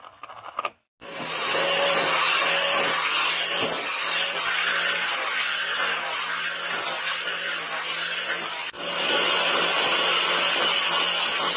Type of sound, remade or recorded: recorded